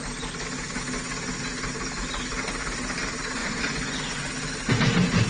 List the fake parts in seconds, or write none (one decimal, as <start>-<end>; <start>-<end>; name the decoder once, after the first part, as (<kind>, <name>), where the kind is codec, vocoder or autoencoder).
3.4-4.2 (vocoder, Vocos)